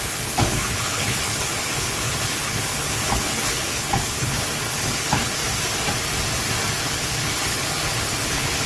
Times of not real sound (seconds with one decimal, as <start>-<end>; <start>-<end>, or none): 0.0-5.4; 6.8-8.7